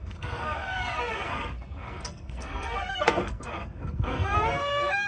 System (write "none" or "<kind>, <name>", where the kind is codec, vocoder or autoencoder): codec, SNAC